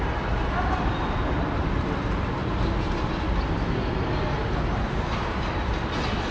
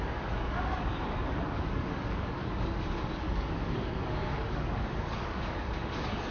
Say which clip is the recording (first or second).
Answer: first